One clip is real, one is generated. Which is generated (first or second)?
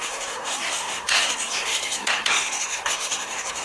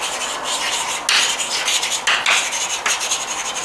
first